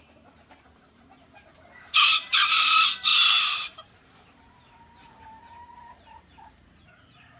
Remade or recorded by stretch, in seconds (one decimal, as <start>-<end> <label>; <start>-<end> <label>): 0.0-7.4 remade